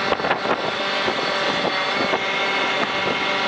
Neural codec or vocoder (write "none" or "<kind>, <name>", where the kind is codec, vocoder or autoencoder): none